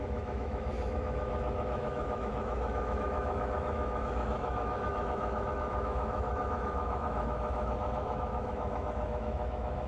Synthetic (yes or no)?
yes